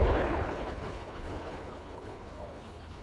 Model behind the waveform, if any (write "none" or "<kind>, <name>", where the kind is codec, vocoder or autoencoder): codec, HILCodec